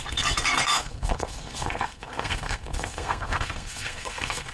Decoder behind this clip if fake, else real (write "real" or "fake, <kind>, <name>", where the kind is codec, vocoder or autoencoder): fake, codec, SNAC